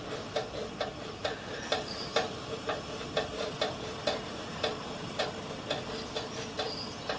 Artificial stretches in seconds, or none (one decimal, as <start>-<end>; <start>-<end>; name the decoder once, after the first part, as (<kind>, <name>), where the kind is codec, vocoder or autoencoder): 0.9-5.2 (vocoder, BigVGAN v2)